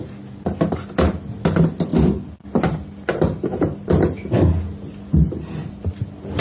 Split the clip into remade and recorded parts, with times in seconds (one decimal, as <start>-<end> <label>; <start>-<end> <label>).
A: 0.0-6.4 recorded